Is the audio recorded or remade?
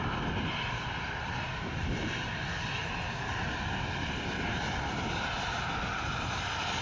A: recorded